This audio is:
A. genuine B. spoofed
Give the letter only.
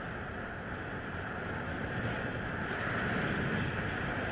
A